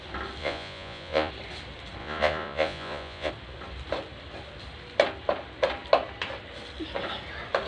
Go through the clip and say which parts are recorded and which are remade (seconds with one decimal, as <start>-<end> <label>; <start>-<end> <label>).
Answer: 0.0-0.4 recorded; 0.4-1.3 remade; 1.3-2.0 recorded; 2.0-3.3 remade; 3.3-7.7 recorded